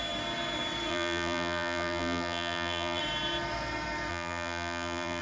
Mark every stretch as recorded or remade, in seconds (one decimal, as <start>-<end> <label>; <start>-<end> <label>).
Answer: 0.0-0.9 recorded; 0.9-3.0 remade; 3.0-4.1 recorded; 4.1-5.2 remade

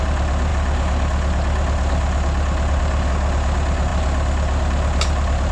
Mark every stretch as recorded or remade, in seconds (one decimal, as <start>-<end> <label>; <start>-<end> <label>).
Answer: 0.0-5.5 recorded